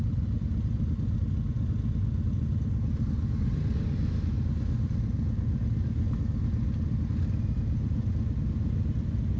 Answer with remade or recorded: recorded